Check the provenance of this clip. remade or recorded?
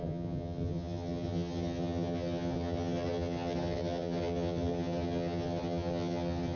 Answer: remade